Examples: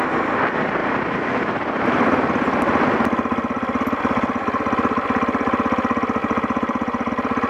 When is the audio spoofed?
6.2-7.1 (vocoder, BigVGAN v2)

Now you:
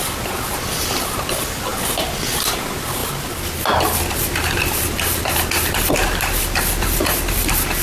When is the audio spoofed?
none

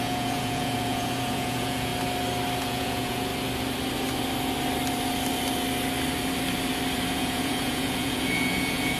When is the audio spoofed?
0.0-1.9 (vocoder, Vocos); 2.6-3.3; 7.1-9.0